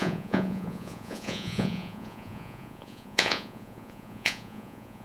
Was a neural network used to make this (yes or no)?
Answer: yes